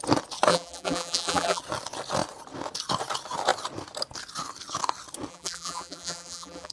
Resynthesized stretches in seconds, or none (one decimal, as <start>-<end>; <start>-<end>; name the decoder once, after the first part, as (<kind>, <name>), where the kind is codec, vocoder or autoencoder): 0.5-1.6 (vocoder, BigVGAN v2); 5.3-6.7